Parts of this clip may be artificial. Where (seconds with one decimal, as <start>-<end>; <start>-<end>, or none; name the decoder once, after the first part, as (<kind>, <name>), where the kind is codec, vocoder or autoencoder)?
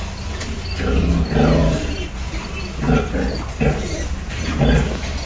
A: none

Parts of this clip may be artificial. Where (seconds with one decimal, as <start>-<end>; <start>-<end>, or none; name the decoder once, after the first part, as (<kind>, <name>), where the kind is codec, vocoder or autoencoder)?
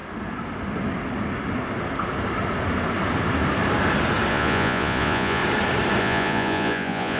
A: 4.3-5.4 (vocoder, Vocos); 6.0-7.2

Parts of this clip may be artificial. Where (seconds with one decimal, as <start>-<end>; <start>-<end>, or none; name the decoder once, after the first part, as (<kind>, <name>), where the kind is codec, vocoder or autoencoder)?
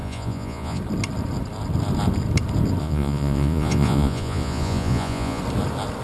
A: 0.0-0.8 (vocoder, Vocos); 2.8-5.4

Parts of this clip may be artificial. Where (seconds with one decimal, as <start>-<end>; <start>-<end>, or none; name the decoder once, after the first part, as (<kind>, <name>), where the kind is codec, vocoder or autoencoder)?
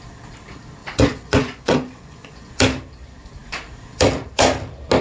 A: 0.8-2.5 (vocoder, Vocos)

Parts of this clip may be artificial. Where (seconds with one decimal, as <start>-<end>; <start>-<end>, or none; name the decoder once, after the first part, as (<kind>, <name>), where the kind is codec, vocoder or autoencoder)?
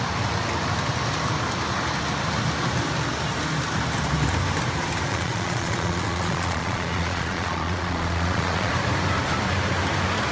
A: 5.1-8.7 (vocoder, Vocos)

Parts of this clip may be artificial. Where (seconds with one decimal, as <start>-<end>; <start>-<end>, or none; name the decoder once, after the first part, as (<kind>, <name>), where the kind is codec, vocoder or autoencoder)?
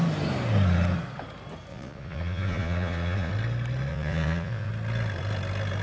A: 1.7-3.3 (vocoder, Vocos); 3.9-4.7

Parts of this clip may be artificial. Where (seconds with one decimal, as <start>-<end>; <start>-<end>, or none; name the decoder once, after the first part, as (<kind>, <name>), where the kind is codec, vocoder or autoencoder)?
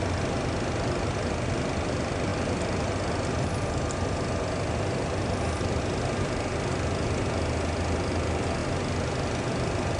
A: none